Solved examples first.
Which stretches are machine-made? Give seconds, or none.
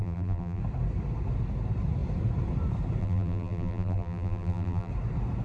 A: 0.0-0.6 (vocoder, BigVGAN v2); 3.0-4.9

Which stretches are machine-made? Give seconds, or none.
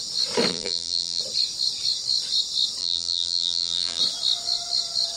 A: 0.5-1.2 (vocoder, BigVGAN v2); 2.8-4.0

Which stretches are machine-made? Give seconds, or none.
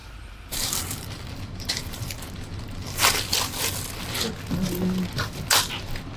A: 0.0-3.7 (vocoder, BigVGAN v2)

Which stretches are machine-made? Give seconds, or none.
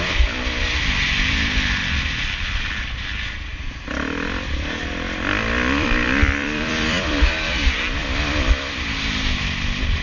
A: 0.0-3.5 (vocoder, BigVGAN v2); 4.5-10.0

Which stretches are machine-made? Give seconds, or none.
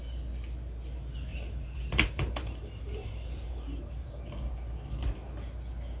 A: 1.3-3.9 (vocoder, BigVGAN v2)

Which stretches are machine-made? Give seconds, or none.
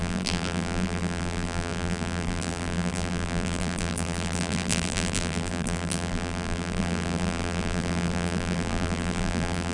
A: 0.0-9.7 (vocoder, BigVGAN v2)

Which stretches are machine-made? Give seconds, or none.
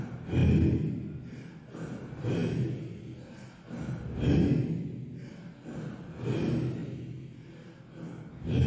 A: none